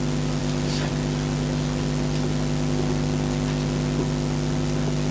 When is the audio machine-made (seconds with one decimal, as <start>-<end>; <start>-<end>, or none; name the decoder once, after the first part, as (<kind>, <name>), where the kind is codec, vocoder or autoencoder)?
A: none